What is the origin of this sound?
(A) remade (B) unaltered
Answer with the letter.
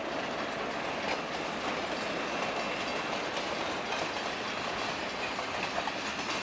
B